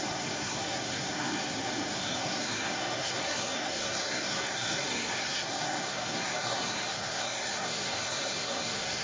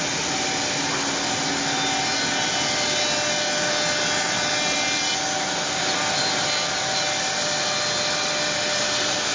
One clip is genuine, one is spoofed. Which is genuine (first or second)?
second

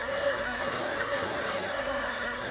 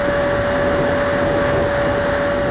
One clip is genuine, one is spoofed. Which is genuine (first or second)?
second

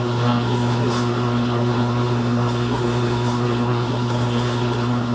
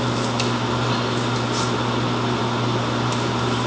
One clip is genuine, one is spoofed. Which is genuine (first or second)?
second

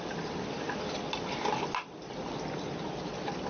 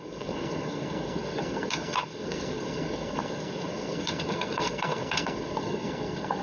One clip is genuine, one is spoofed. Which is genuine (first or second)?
first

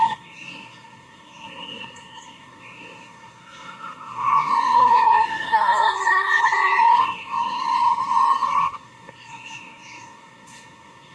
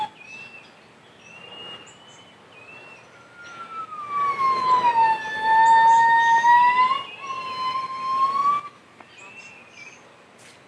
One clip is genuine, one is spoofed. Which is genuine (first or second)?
second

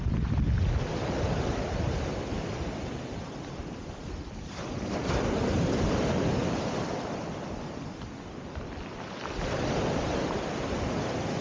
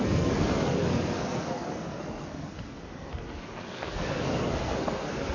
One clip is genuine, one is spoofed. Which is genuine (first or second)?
first